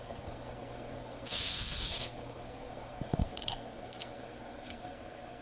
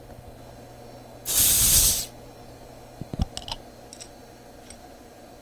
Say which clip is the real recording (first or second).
second